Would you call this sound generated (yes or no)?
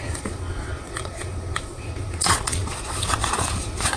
yes